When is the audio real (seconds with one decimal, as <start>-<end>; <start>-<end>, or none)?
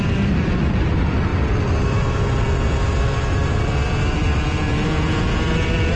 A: 0.0-4.3; 5.4-6.0